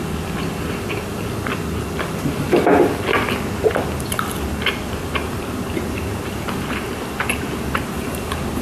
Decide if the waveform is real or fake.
real